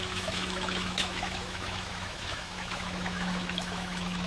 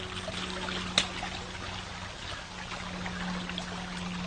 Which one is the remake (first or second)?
first